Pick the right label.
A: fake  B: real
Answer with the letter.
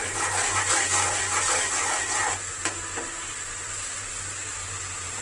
B